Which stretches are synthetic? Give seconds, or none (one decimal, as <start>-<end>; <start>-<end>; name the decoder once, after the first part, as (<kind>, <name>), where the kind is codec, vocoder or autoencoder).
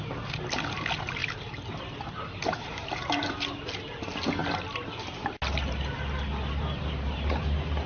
1.2-1.7 (vocoder, BigVGAN v2); 4.4-5.4